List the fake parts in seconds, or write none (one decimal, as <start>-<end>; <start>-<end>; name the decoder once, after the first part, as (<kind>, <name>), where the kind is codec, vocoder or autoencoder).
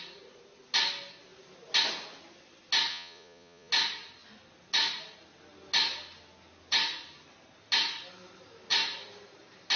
2.9-3.7 (vocoder, Vocos)